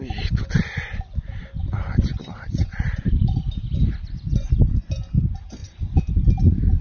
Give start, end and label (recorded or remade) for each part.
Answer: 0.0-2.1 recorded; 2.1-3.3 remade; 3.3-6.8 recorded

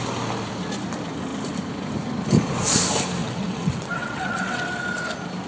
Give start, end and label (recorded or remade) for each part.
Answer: 0.0-3.2 recorded; 3.2-4.8 remade; 4.8-5.5 recorded

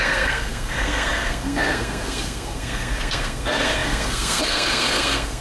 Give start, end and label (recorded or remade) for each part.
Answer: 0.0-5.4 remade

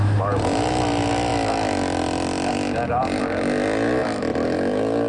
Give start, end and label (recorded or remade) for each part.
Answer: 0.0-0.8 remade; 0.8-5.1 recorded

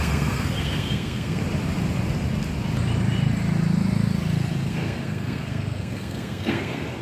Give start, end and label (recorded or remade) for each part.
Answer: 0.0-1.4 remade; 1.4-4.7 recorded; 4.7-7.0 remade

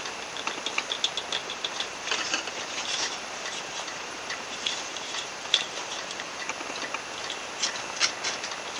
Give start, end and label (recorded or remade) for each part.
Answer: 0.0-1.4 recorded; 1.4-6.4 remade; 6.4-8.8 recorded

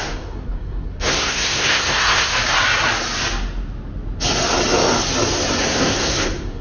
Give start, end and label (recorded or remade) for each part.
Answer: 0.0-2.3 remade; 2.3-5.6 recorded; 5.6-6.6 remade

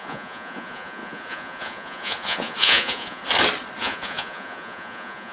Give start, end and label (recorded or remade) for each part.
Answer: 0.0-3.2 remade; 3.2-3.8 recorded; 3.8-5.3 remade